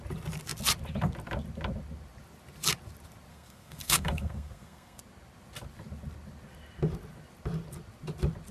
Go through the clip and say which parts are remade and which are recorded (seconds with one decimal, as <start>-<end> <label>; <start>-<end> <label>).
0.0-3.3 recorded; 3.3-5.0 remade; 5.0-8.5 recorded